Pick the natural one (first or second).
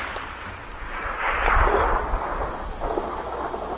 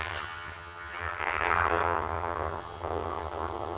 first